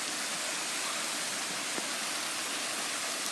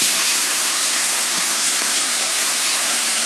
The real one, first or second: first